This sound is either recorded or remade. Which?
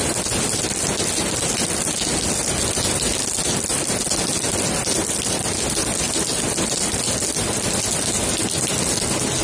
recorded